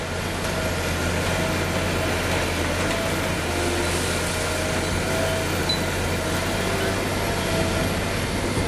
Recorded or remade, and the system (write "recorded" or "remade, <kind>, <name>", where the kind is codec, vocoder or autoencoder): recorded